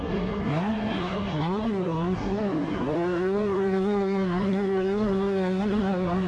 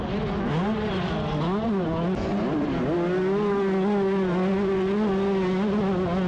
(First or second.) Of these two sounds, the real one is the second